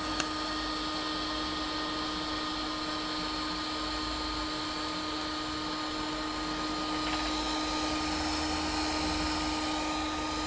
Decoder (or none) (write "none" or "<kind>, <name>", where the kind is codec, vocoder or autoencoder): none